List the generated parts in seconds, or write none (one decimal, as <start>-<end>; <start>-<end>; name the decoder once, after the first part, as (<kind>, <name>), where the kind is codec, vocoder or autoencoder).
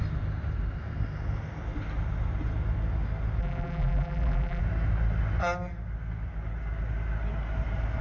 3.4-4.6 (vocoder, BigVGAN v2)